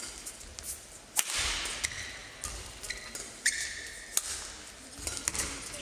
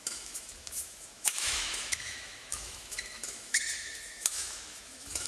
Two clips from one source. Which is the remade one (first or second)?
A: second